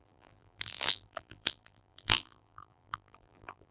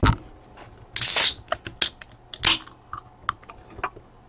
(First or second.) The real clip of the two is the second